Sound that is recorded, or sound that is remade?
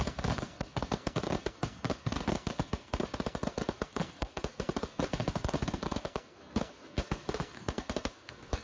remade